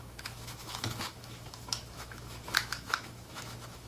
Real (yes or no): no